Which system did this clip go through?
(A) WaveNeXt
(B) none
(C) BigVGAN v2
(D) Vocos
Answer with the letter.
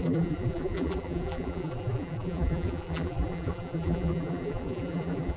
C